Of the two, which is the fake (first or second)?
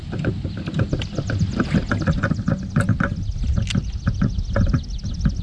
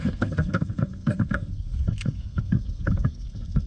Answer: second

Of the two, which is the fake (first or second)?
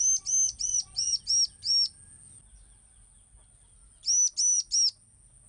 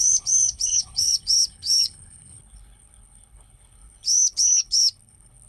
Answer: second